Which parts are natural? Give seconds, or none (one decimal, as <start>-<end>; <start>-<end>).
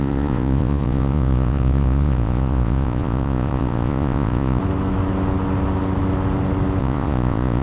4.6-6.8